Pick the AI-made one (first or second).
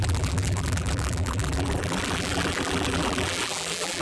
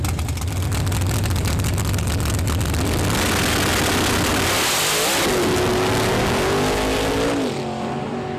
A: first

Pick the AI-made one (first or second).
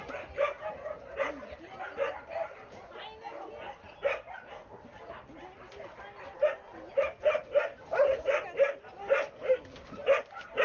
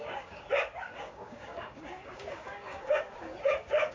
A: second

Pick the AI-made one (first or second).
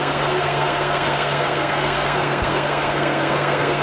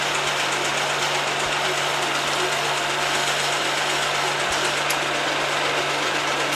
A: first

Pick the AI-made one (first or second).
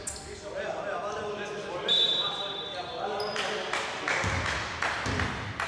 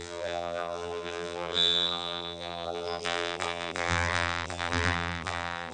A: second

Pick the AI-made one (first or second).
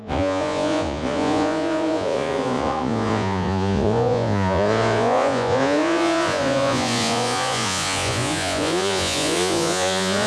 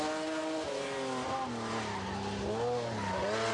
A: first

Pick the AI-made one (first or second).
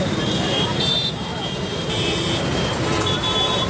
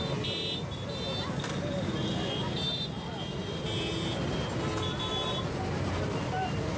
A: first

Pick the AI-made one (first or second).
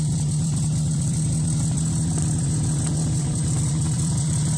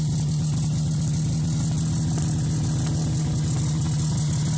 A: first